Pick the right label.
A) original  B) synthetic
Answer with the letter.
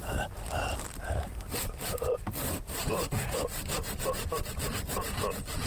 A